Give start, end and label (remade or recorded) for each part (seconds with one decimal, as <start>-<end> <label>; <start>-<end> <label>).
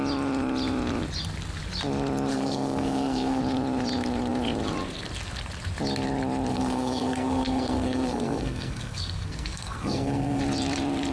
0.0-2.3 recorded; 2.3-3.4 remade; 3.4-6.5 recorded; 6.5-10.4 remade; 10.4-11.1 recorded